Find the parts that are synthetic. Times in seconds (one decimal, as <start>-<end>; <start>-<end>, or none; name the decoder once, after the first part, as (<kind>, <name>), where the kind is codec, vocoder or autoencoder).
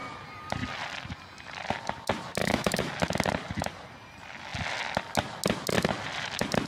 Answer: 2.4-2.9 (autoencoder, DAC-VAE)